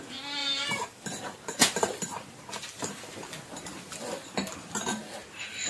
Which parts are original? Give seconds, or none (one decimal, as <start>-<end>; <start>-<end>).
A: 0.0-0.4; 3.4-5.7